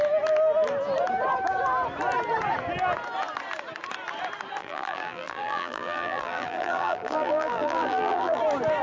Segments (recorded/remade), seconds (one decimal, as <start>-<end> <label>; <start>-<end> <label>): 0.0-4.6 recorded; 4.6-8.4 remade; 8.4-8.8 recorded